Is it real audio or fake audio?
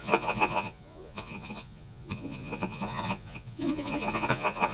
fake